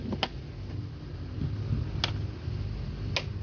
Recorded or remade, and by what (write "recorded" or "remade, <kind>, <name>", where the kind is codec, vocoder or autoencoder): recorded